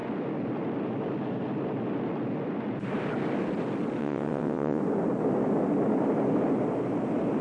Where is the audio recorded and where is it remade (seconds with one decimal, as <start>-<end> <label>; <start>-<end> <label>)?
0.0-4.0 recorded; 4.0-4.8 remade; 4.8-7.4 recorded